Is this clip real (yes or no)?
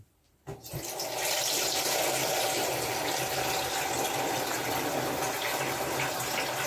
yes